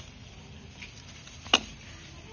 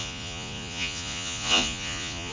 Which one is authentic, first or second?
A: first